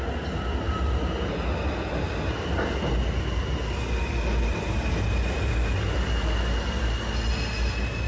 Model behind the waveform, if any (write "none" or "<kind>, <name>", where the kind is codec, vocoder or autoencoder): none